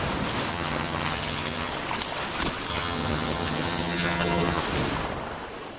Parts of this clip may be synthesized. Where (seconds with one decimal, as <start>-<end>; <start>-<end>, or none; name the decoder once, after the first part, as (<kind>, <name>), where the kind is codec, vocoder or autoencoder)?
0.5-1.7 (vocoder, HiFi-GAN); 2.7-4.6